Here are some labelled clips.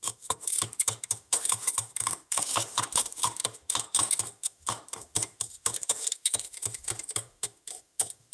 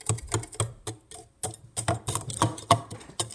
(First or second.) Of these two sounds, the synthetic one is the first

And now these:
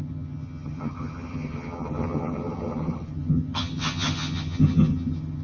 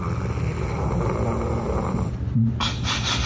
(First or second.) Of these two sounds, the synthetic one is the first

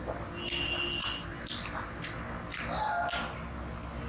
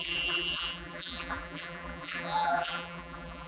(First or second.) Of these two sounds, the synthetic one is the second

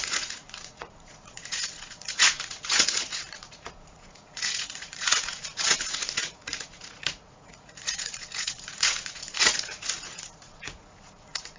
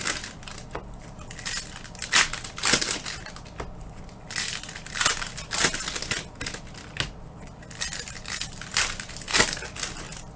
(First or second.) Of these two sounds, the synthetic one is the first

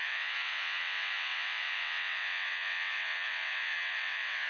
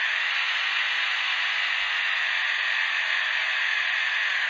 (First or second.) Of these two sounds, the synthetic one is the first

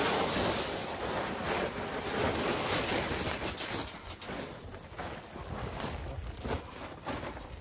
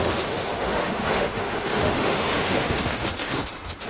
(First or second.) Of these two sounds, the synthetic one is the second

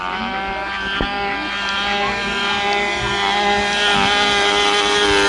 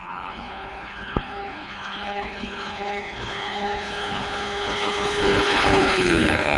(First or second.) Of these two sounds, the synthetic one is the second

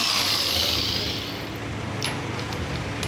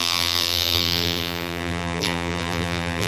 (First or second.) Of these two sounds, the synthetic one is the second